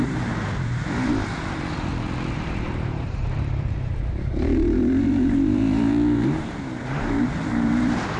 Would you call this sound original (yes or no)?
no